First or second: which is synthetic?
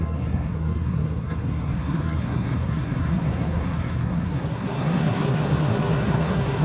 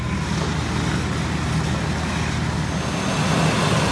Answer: first